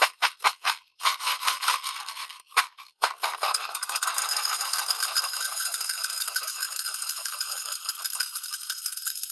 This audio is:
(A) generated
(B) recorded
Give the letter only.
A